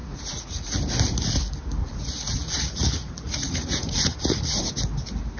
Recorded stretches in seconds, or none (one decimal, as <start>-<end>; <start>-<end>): 0.8-1.8; 4.6-5.4